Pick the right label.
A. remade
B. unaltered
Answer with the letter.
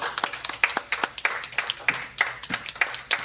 B